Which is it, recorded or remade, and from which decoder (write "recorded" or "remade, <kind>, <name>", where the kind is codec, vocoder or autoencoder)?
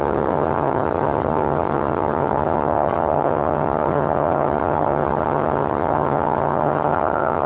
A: remade, vocoder, HiFi-GAN